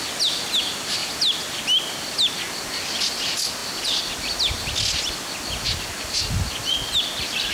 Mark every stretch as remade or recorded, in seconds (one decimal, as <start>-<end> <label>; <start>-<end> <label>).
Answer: 0.0-7.5 recorded